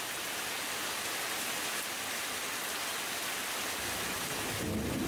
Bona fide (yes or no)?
yes